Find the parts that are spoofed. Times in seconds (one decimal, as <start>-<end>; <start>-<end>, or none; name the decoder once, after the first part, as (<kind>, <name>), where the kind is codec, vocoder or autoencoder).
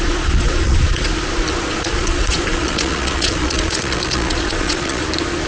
0.0-1.1 (vocoder, Vocos); 1.7-5.0